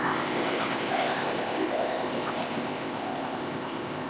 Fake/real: fake